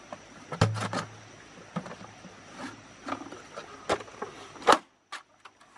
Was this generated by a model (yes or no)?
no